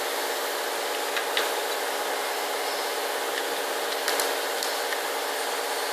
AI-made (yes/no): no